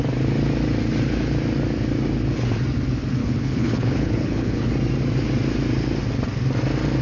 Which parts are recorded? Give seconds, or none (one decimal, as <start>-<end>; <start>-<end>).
0.0-3.2; 4.7-7.0